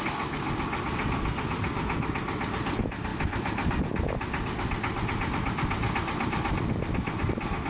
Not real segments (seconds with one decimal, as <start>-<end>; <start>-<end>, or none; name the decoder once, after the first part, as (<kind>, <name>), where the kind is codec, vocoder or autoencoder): 3.1-7.3 (vocoder, BigVGAN v2)